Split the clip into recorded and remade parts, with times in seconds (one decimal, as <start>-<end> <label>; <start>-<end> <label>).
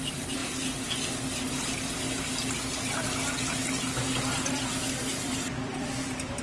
0.0-0.4 remade; 0.4-4.2 recorded; 4.2-6.4 remade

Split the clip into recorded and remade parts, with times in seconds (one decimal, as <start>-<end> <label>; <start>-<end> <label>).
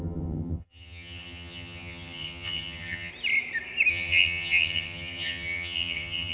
0.0-3.1 remade; 3.1-3.9 recorded; 3.9-6.3 remade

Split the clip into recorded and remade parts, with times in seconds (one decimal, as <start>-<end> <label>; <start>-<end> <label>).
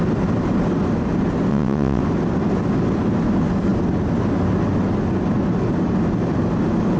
0.0-1.5 recorded; 1.5-2.0 remade; 2.0-7.0 recorded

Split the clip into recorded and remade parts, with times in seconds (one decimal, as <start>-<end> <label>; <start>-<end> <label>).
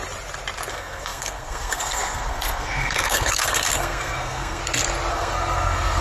0.0-0.7 recorded; 0.7-4.6 remade; 4.6-5.1 recorded; 5.1-6.0 remade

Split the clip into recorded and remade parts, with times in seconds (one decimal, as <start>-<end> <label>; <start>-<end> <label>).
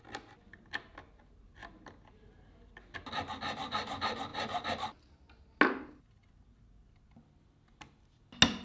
0.0-8.6 recorded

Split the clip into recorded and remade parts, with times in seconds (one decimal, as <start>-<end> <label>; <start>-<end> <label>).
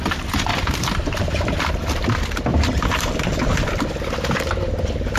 0.0-0.5 recorded; 0.5-1.8 remade; 1.8-5.2 recorded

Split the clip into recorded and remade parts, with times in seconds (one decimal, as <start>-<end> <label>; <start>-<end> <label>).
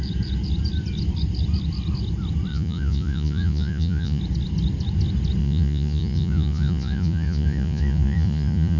0.0-2.5 recorded; 2.5-4.2 remade; 4.2-5.4 recorded; 5.4-8.8 remade